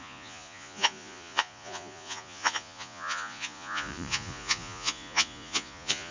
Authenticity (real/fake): fake